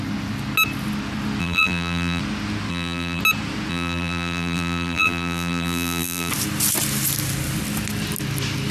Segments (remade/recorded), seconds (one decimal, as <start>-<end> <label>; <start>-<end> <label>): 0.0-1.4 recorded; 1.4-2.2 remade; 2.2-2.7 recorded; 2.7-3.2 remade; 3.2-3.7 recorded; 3.7-6.3 remade; 6.3-8.7 recorded